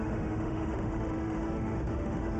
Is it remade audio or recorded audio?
remade